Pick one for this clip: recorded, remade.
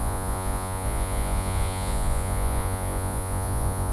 remade